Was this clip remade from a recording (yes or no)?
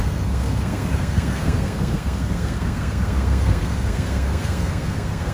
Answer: yes